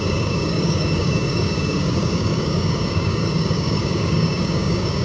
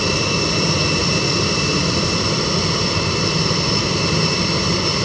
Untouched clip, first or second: second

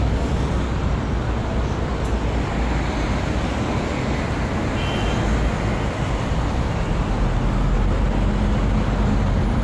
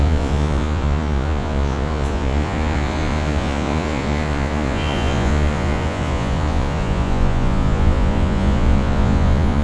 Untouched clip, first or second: first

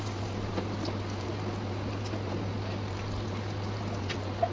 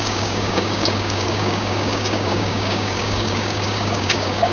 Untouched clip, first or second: first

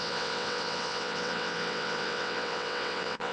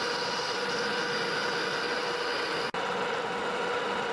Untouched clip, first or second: second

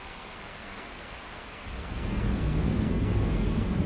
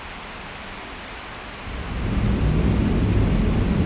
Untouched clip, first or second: second